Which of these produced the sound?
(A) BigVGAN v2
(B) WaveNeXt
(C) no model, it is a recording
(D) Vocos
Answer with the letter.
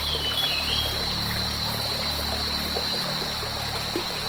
C